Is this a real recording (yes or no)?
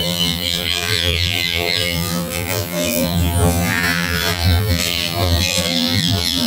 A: no